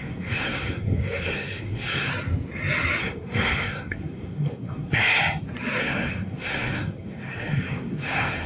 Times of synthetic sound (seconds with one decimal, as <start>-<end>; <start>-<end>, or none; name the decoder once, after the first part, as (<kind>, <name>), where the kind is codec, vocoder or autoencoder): 0.0-2.1 (codec, SNAC); 3.0-5.2; 5.8-8.5